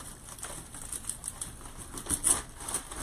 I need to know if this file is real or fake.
real